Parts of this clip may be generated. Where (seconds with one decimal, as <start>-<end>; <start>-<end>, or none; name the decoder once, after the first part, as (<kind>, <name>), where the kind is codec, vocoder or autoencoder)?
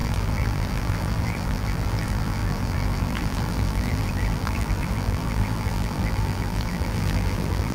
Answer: 0.0-7.7 (vocoder, BigVGAN v2)